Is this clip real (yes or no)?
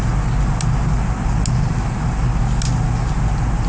yes